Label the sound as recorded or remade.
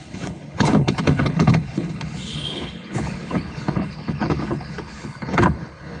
remade